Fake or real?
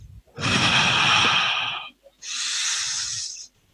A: real